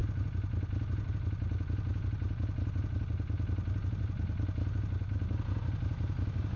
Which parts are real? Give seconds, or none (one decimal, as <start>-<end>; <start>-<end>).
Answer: 0.0-6.6